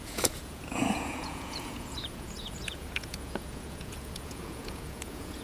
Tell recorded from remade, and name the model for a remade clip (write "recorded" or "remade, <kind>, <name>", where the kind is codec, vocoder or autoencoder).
remade, vocoder, Vocos